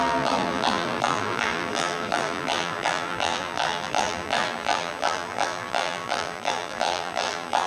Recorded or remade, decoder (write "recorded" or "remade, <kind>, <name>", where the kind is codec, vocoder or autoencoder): remade, vocoder, BigVGAN v2